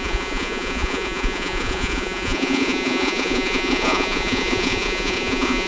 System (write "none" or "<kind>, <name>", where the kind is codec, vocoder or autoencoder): vocoder, Vocos